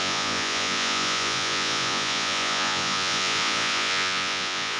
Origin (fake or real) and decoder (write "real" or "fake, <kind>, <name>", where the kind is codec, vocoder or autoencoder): fake, vocoder, Vocos